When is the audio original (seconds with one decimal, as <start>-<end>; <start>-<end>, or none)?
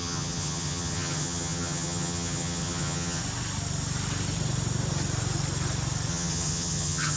3.2-6.1